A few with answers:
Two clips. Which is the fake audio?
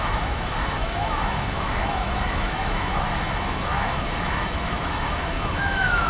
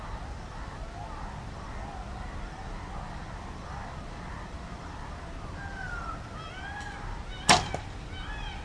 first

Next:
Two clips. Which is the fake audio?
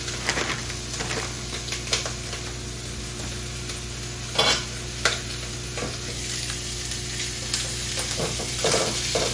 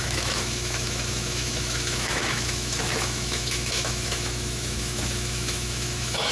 second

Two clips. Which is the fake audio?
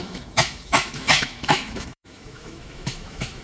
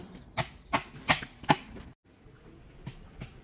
first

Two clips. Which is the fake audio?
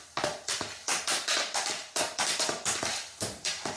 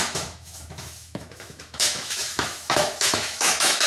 second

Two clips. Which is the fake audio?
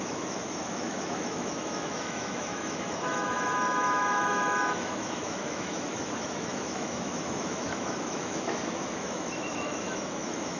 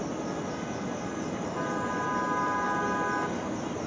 first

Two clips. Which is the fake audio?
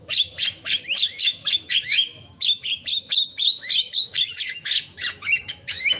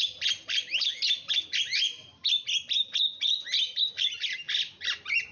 first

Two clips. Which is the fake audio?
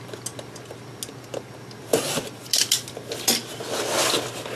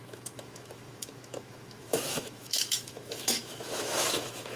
second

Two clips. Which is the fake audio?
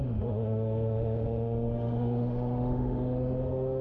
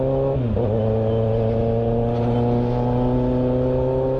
first